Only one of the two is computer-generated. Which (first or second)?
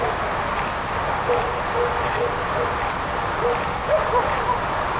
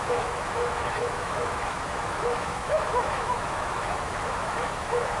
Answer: second